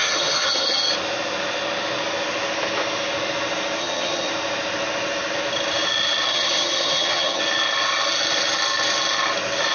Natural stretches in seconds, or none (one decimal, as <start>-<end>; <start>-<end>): 0.8-3.8; 4.3-6.3; 7.4-9.7